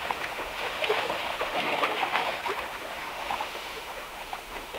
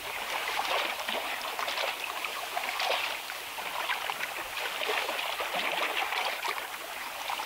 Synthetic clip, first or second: first